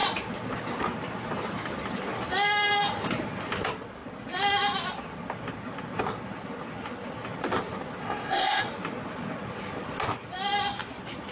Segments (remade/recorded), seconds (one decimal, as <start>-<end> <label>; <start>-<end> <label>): 0.0-8.0 recorded; 8.0-8.6 remade; 8.6-11.3 recorded